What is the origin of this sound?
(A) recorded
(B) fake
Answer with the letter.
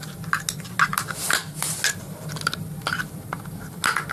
A